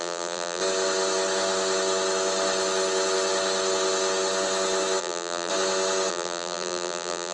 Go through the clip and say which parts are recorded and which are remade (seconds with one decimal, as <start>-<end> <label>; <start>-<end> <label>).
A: 0.0-0.6 remade; 0.6-5.0 recorded; 5.0-5.5 remade; 5.5-6.1 recorded; 6.1-7.3 remade